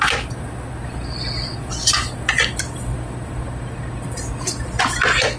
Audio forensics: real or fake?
real